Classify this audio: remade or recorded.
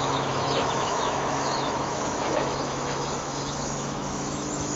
remade